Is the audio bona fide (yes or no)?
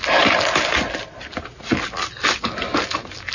yes